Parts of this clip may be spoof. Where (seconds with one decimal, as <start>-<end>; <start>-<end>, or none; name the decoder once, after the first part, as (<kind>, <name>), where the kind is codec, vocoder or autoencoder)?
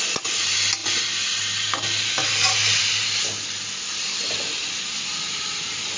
none